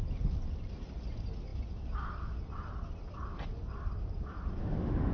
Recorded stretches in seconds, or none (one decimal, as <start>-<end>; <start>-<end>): 0.0-4.6